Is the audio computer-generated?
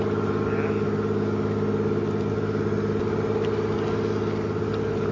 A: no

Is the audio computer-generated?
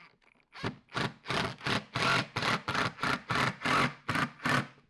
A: no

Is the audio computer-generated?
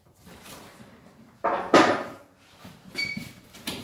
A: yes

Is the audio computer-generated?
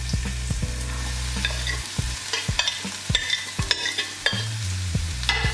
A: no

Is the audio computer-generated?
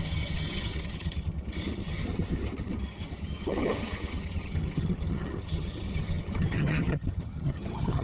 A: yes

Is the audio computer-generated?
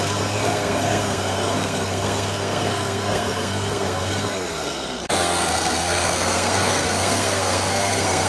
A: yes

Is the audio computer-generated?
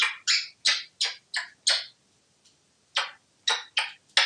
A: no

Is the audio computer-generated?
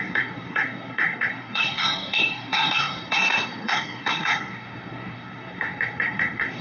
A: yes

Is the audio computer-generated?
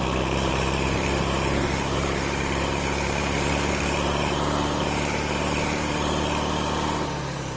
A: yes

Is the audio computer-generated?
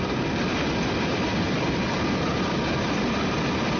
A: no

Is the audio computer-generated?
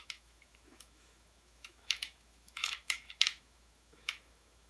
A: yes